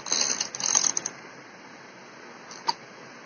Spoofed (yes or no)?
no